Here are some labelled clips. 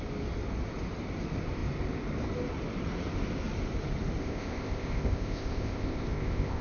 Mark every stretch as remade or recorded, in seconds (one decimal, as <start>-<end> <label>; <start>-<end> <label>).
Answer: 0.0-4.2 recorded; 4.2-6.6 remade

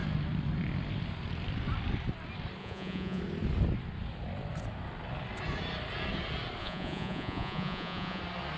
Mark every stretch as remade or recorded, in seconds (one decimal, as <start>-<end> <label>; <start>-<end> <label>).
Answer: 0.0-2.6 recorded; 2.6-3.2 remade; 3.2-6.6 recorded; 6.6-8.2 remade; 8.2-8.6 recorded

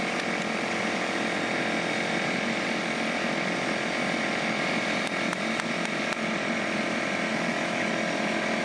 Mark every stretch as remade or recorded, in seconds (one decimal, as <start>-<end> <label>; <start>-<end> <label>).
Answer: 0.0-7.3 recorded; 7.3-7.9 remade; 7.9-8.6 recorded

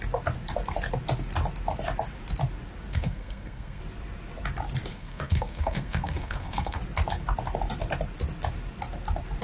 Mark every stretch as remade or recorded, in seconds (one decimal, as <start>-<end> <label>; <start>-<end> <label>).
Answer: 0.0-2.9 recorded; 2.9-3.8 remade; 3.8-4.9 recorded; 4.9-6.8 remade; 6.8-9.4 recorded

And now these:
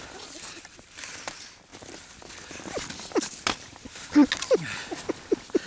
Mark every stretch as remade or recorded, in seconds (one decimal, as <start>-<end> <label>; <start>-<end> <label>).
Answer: 0.0-5.7 recorded

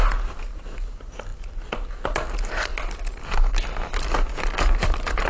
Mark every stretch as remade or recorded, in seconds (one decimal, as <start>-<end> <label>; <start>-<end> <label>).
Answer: 0.0-5.3 recorded

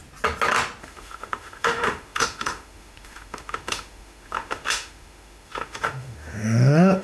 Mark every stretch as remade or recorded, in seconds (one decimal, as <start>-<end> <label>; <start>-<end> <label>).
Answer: 0.0-0.8 recorded; 0.8-7.0 remade

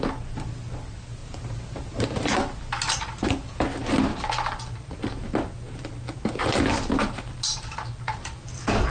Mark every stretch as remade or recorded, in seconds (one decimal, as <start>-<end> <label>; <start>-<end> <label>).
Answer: 0.0-1.2 recorded; 1.2-2.3 remade; 2.3-4.1 recorded; 4.1-5.0 remade; 5.0-7.5 recorded; 7.5-8.4 remade; 8.4-8.9 recorded